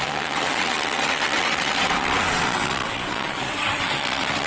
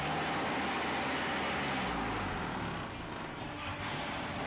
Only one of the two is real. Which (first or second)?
second